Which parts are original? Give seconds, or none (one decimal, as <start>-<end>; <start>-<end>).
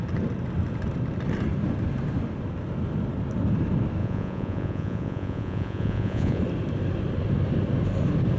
0.0-4.0; 6.4-8.4